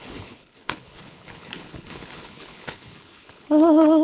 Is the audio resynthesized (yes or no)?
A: yes